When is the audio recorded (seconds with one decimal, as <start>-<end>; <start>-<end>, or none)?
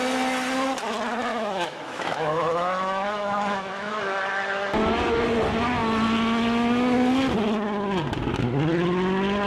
0.0-1.3; 4.2-9.5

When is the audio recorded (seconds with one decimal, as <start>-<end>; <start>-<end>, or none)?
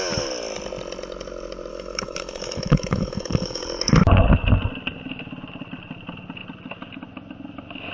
0.0-1.7; 3.6-7.9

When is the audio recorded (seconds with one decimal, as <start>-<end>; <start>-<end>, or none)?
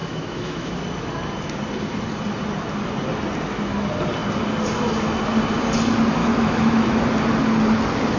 0.8-6.2; 7.0-8.2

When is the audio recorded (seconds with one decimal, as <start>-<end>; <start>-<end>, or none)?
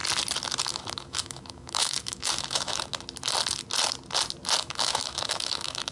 0.0-0.6; 2.9-4.6